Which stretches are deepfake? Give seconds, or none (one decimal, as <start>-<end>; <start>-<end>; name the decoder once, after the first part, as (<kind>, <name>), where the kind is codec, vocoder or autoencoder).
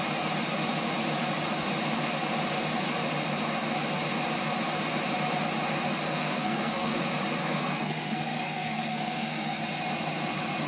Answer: 6.1-7.0 (codec, SNAC); 7.4-9.6